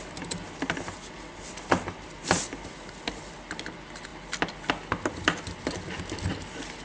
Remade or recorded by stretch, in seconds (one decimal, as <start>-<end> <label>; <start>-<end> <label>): 0.0-2.2 recorded; 2.2-2.9 remade; 2.9-6.8 recorded